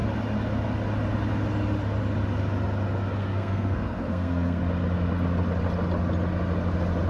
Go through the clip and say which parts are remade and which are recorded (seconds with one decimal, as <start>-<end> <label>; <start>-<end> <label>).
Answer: 0.0-3.2 recorded; 3.2-4.6 remade; 4.6-7.1 recorded